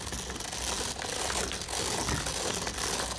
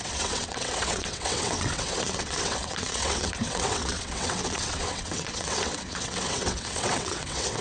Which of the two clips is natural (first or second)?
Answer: first